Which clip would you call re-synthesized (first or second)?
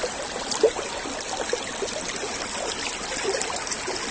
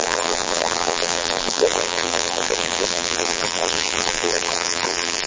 second